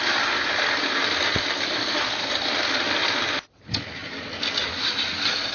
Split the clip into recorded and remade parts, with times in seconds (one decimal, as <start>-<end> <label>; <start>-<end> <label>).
0.0-5.5 recorded